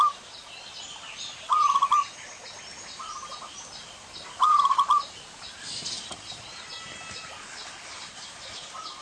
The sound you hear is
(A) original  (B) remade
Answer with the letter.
A